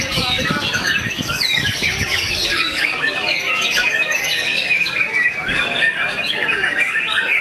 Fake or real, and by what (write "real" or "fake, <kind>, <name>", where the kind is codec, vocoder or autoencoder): fake, codec, DAC